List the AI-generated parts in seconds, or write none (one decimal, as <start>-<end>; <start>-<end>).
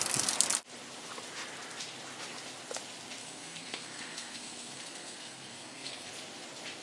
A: 3.2-6.1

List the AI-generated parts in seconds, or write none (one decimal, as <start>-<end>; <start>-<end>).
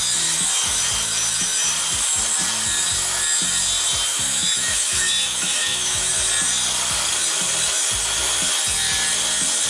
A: 4.1-6.1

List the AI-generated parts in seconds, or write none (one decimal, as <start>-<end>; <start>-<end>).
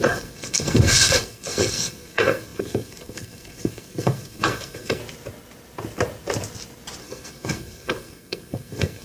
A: 0.0-5.0; 7.0-9.0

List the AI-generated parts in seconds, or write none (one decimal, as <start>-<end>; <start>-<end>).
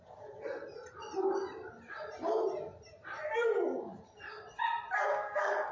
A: 5.1-5.7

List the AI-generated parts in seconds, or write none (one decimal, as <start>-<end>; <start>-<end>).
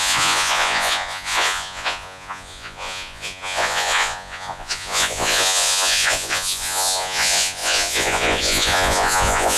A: 0.0-9.6